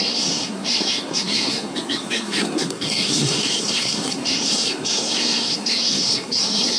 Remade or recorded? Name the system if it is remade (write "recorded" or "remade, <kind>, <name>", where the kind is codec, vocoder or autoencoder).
remade, codec, SNAC